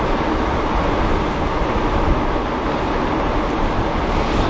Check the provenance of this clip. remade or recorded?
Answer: recorded